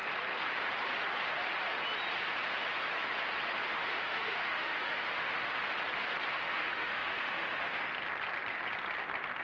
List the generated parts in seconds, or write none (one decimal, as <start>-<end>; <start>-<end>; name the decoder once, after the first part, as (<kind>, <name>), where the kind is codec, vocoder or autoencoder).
3.7-5.5 (autoencoder, DAC-VAE); 6.3-7.9